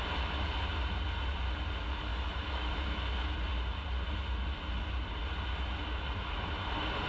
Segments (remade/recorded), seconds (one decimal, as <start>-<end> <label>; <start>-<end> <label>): 0.0-2.1 recorded; 2.1-3.0 remade; 3.0-7.1 recorded